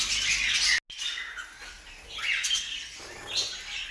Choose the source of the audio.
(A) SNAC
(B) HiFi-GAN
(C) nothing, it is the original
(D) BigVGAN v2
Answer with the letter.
C